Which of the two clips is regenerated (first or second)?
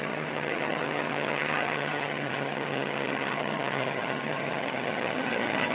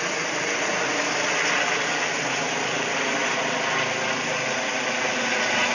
first